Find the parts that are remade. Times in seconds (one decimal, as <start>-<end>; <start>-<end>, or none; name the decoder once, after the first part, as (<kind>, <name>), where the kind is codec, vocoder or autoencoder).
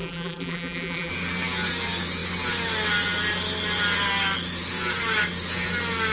0.0-1.1 (vocoder, BigVGAN v2)